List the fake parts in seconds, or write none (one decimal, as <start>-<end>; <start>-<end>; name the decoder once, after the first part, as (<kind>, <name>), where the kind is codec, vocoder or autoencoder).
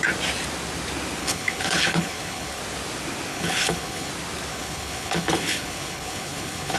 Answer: 1.2-2.6 (codec, HILCodec); 3.3-4.1; 4.5-6.8